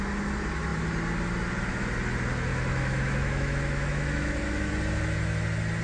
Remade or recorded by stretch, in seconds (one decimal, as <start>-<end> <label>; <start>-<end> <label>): 0.0-2.5 recorded; 2.5-4.7 remade; 4.7-5.8 recorded